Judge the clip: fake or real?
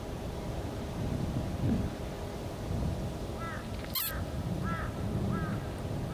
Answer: real